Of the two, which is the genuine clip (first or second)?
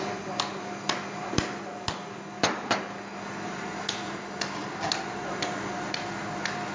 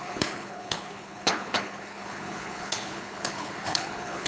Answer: first